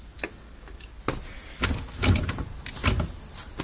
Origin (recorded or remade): recorded